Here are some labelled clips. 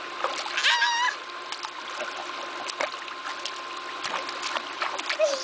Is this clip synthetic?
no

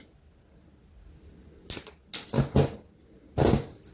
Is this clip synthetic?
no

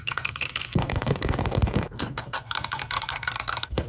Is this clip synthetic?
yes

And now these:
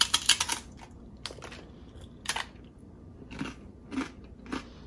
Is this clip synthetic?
no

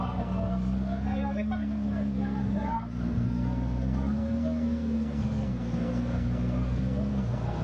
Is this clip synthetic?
yes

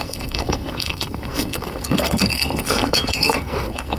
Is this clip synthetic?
yes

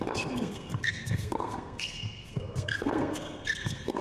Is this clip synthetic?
yes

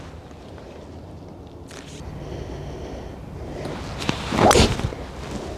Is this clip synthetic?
no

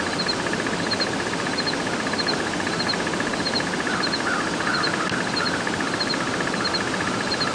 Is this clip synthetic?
no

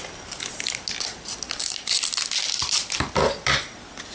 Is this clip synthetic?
no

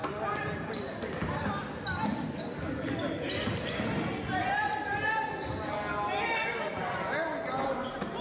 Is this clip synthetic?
no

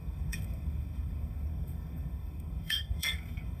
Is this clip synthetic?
yes